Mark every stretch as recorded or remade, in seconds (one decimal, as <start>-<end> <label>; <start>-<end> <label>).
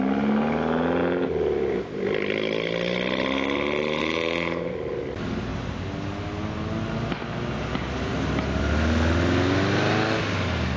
0.0-10.8 recorded